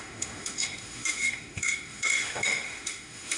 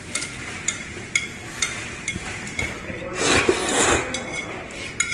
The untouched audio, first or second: second